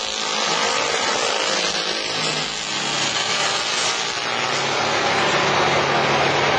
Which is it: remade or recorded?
recorded